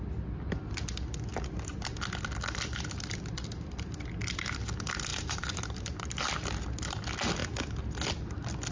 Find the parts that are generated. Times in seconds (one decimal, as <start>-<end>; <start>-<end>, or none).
5.1-6.2